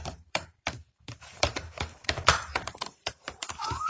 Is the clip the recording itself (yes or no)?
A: no